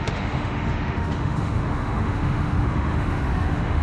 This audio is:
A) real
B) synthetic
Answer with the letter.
B